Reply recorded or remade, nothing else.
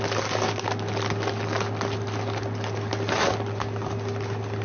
recorded